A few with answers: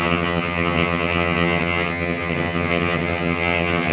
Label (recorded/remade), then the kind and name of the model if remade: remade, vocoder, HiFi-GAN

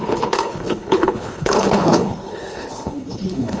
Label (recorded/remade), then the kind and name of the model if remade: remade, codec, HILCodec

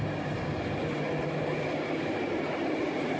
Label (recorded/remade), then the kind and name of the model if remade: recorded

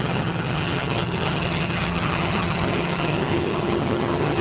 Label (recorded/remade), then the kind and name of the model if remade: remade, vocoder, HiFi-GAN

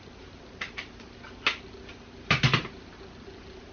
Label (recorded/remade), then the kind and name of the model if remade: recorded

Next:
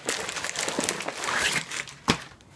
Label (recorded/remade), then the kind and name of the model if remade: recorded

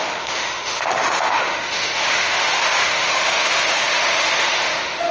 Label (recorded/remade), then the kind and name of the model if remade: remade, autoencoder, DAC-VAE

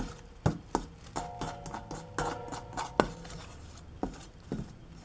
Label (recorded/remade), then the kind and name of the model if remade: recorded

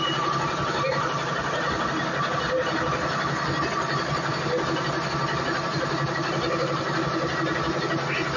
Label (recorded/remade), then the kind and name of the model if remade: recorded